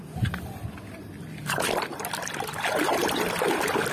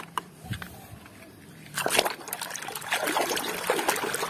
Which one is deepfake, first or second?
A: first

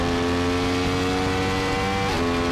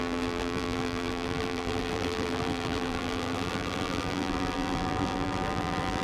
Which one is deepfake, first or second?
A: second